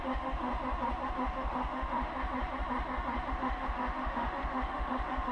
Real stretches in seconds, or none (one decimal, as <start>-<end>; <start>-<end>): 0.5-1.1; 2.1-3.3